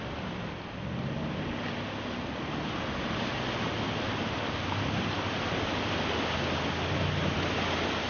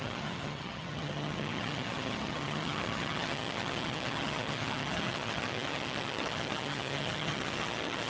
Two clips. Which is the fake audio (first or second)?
second